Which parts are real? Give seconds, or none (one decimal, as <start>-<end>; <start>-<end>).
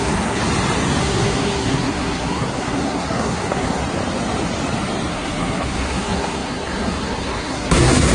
0.4-1.0; 3.8-5.1